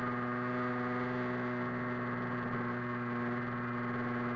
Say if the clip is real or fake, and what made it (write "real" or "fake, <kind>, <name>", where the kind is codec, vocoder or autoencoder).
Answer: real